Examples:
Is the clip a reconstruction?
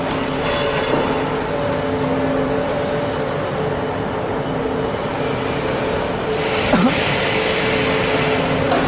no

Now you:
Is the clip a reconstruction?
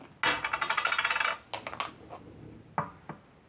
no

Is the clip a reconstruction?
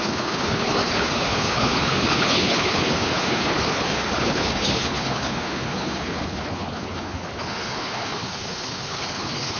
yes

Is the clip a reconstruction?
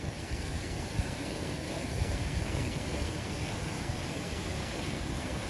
yes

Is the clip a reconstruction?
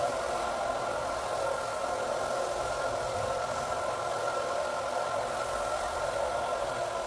no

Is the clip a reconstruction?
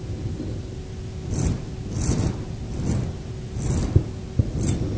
no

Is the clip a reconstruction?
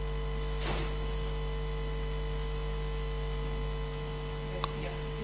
no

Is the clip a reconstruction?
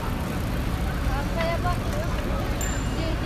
no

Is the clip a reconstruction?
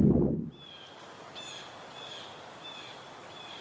no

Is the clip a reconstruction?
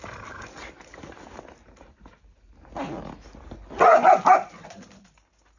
no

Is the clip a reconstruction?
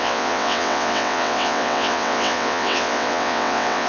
yes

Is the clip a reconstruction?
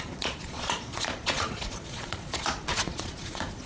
yes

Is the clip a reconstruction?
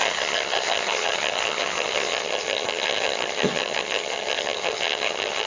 yes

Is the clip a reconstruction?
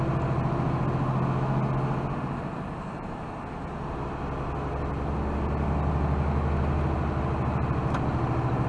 no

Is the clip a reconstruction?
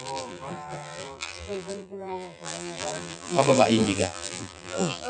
yes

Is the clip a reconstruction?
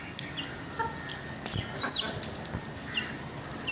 no